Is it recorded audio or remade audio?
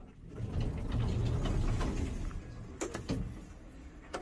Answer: recorded